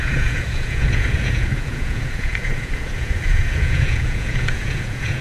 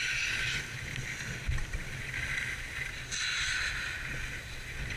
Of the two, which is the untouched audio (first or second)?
second